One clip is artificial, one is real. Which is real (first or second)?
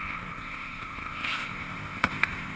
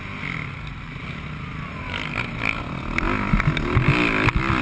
second